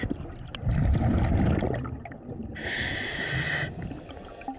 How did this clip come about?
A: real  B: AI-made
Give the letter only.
A